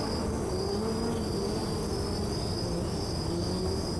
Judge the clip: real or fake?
real